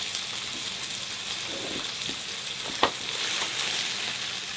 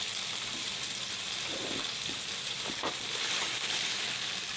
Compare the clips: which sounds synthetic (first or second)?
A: second